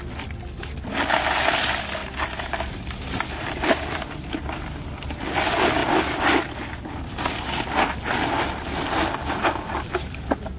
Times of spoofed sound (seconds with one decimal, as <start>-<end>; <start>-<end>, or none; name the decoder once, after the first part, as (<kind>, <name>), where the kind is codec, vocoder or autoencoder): 2.0-4.9 (vocoder, BigVGAN v2)